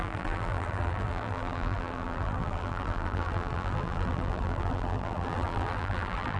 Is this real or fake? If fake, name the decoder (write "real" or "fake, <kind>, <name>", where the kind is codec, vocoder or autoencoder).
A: fake, vocoder, BigVGAN v2